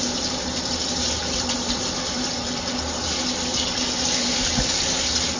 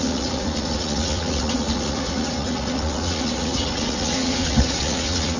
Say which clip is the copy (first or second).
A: second